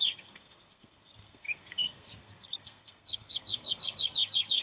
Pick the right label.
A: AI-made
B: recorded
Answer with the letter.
A